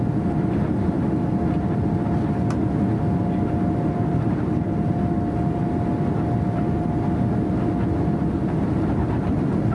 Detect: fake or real real